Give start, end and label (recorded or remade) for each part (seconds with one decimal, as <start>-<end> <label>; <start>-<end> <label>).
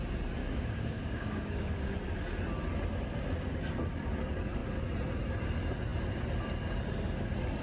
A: 0.0-0.4 recorded; 0.4-1.9 remade; 1.9-7.6 recorded